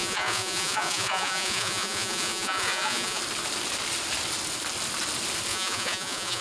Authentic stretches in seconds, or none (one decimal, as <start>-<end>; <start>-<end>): 3.2-5.5

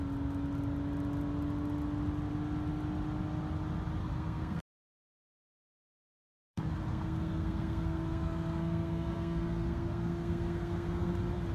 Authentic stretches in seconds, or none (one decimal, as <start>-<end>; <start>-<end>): 0.0-4.0; 4.6-5.8; 11.1-11.5

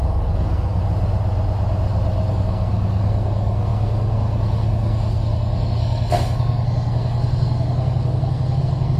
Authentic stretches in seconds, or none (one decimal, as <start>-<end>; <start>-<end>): 0.8-2.3